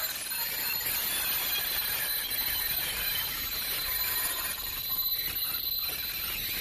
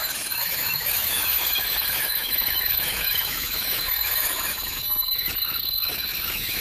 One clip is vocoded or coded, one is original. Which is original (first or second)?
first